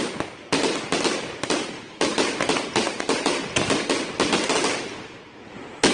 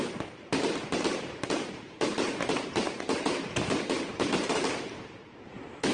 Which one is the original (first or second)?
first